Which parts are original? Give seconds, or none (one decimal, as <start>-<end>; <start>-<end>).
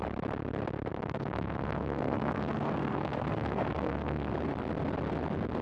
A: 0.0-0.9; 4.3-5.6